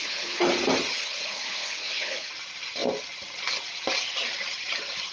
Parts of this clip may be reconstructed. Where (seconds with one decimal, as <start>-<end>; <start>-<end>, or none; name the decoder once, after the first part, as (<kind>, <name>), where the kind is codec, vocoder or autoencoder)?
0.0-0.5 (codec, HILCodec); 0.9-2.3